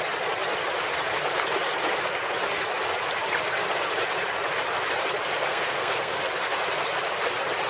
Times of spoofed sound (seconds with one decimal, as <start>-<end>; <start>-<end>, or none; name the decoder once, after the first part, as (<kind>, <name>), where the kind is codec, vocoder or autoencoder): 5.5-6.2 (codec, SNAC)